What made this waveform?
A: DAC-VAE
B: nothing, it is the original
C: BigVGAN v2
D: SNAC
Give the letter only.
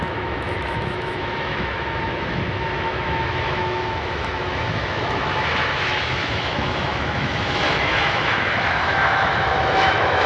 A